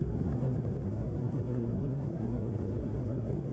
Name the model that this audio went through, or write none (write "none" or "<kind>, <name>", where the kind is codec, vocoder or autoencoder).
codec, SNAC